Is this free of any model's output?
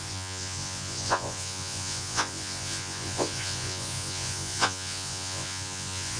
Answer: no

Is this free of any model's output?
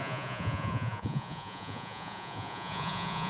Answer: no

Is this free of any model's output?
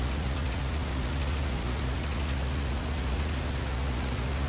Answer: no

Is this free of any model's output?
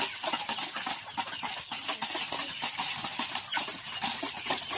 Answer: yes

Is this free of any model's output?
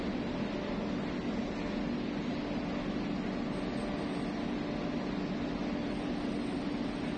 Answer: yes